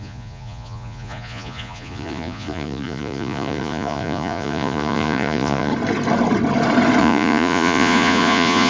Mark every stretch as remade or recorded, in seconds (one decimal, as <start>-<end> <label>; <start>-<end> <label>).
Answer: 0.0-5.7 remade; 5.7-7.0 recorded; 7.0-8.7 remade